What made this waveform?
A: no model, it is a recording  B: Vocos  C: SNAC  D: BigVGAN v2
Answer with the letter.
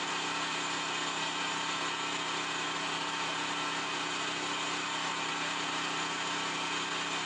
A